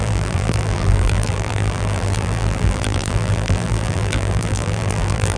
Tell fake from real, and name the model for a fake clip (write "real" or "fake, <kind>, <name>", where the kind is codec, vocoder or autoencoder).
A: fake, vocoder, BigVGAN v2